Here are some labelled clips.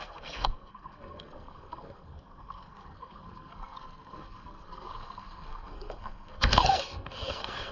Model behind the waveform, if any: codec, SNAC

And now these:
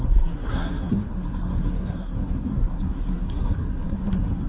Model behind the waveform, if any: codec, SNAC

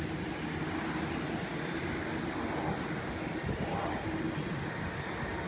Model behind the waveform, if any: none